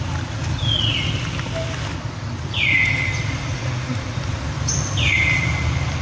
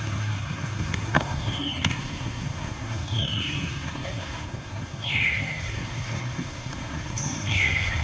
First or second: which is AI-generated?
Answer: second